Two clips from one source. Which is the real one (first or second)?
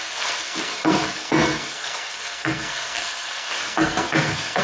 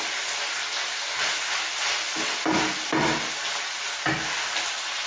second